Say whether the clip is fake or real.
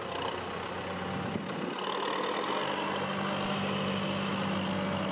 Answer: real